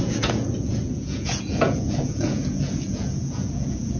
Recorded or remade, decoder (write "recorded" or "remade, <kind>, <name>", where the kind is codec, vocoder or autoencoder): remade, vocoder, Vocos